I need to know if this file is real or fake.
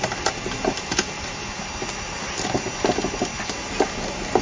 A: real